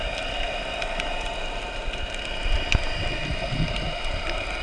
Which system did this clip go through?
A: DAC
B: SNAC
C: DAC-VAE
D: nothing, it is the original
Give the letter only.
D